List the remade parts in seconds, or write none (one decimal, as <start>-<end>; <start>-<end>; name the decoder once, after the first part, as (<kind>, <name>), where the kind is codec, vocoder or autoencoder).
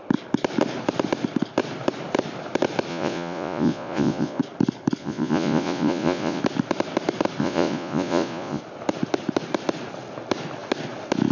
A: 2.9-4.4 (vocoder, Vocos); 5.0-6.4; 7.4-8.6